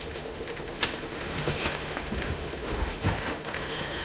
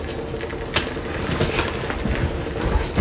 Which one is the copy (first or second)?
first